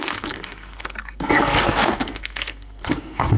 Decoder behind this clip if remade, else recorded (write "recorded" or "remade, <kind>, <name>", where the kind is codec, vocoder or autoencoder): remade, codec, SNAC